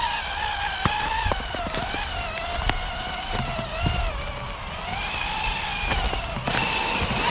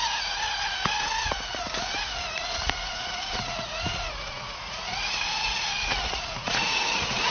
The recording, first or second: first